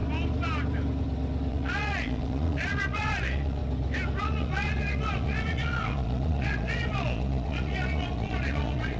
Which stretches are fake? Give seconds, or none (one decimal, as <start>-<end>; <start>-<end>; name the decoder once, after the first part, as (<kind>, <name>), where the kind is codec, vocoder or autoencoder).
1.5-3.6 (vocoder, Vocos); 4.2-9.0